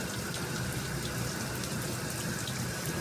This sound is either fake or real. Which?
real